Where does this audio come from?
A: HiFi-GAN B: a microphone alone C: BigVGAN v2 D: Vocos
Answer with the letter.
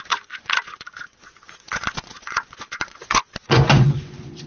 D